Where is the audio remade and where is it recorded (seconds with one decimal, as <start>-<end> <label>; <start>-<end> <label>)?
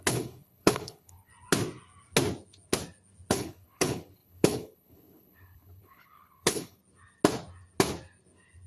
0.0-1.3 remade; 1.3-3.3 recorded; 3.3-6.8 remade; 6.8-8.7 recorded